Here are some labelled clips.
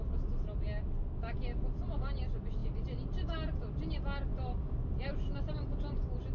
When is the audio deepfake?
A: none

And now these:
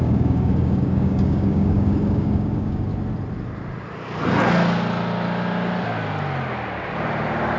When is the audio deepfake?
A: 0.0-2.9 (codec, DAC)